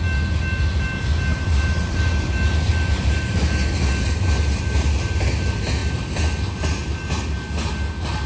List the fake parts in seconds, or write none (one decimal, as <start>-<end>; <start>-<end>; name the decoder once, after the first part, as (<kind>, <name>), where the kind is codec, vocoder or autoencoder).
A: 1.3-2.1 (vocoder, BigVGAN v2); 2.7-3.4